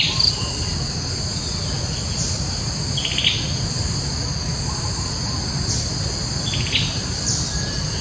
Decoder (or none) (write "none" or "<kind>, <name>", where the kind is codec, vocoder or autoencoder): none